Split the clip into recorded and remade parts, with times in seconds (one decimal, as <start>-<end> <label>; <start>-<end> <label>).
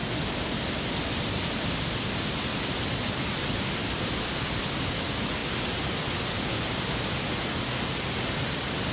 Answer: 0.0-2.5 recorded; 2.5-4.6 remade; 4.6-8.9 recorded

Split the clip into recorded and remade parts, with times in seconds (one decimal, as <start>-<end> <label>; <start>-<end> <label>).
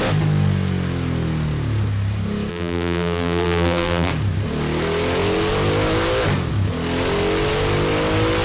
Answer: 0.0-2.5 recorded; 2.5-4.1 remade; 4.1-8.4 recorded